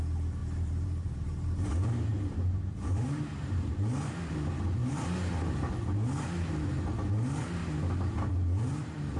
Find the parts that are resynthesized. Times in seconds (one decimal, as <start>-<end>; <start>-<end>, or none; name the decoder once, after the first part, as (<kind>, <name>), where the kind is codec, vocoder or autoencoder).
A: 0.4-3.7 (vocoder, BigVGAN v2); 4.8-5.7; 7.6-8.3